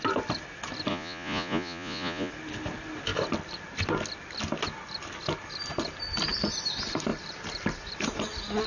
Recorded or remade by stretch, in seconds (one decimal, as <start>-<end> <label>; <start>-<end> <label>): 0.0-0.9 recorded; 0.9-2.3 remade; 2.3-8.7 recorded